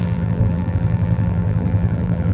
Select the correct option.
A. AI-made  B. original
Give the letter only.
A